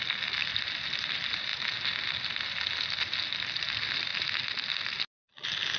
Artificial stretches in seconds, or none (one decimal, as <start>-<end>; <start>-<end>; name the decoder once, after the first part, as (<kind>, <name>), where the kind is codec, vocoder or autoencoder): none